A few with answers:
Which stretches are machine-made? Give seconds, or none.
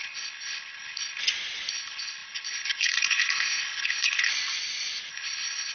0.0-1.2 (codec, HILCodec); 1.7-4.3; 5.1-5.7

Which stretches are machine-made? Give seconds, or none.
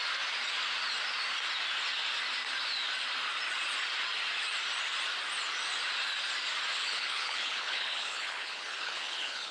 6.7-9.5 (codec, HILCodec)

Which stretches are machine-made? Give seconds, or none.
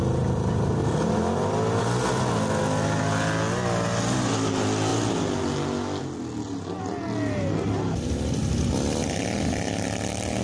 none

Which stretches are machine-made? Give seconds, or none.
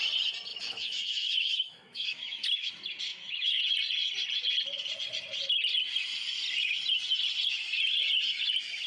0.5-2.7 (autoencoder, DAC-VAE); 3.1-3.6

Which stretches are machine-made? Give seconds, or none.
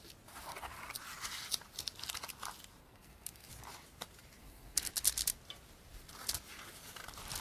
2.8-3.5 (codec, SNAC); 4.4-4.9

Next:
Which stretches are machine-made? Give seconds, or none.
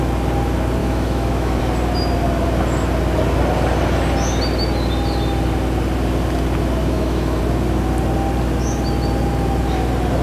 0.8-1.6 (autoencoder, DAC-VAE); 6.8-7.4